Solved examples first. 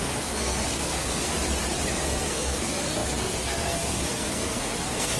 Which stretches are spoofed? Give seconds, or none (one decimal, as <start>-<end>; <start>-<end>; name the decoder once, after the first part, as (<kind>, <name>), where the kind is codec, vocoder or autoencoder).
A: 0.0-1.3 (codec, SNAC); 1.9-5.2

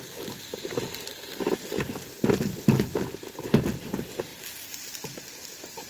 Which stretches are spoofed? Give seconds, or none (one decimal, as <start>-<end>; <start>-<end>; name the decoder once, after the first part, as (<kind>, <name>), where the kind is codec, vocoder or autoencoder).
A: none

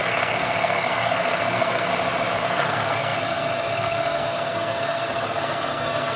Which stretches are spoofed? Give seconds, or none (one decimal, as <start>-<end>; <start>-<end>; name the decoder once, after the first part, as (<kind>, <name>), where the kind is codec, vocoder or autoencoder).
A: 0.0-1.9 (codec, SNAC); 2.4-6.2